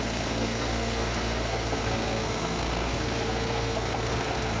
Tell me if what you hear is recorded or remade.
remade